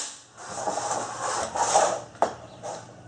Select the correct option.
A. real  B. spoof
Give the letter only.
A